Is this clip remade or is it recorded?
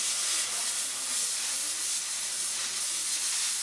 recorded